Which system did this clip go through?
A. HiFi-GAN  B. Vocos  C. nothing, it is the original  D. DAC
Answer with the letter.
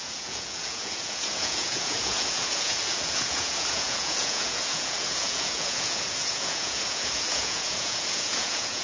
B